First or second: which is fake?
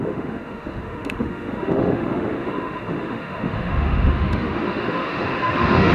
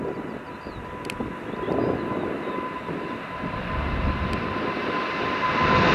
first